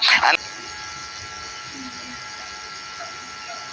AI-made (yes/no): no